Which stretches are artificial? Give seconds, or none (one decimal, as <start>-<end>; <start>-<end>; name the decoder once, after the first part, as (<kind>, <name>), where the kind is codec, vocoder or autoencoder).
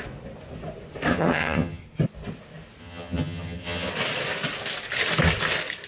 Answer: 1.1-1.8 (vocoder, HiFi-GAN); 2.8-3.9